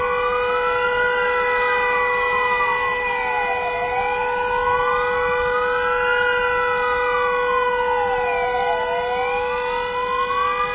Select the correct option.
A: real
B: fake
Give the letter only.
A